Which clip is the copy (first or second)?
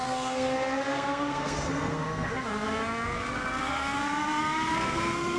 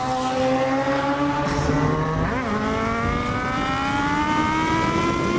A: first